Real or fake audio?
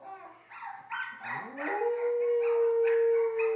real